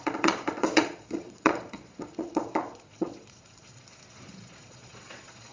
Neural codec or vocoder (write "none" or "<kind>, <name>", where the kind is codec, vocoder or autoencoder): vocoder, Vocos